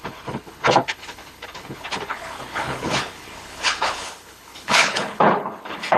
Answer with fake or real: fake